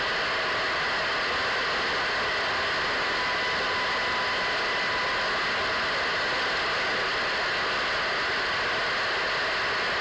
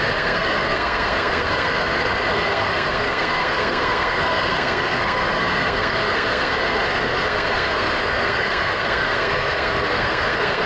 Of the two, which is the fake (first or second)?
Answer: second